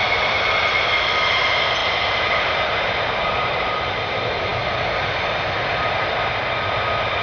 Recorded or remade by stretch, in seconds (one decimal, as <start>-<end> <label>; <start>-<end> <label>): 0.0-1.8 recorded; 1.8-3.8 remade; 3.8-7.2 recorded